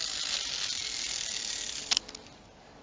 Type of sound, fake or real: real